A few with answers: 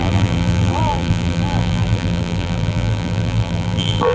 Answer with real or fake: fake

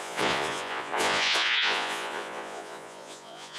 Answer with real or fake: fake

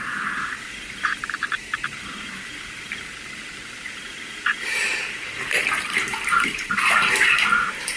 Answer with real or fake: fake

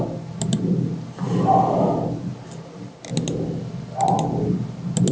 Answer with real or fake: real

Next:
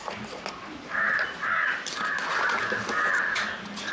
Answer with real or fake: real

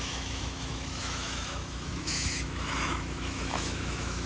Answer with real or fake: fake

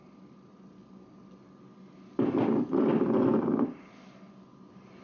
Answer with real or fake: real